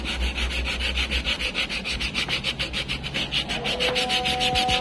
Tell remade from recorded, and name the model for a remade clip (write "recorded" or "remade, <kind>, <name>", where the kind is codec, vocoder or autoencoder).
recorded